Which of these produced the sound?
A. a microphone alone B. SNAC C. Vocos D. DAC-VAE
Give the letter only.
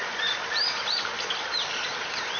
A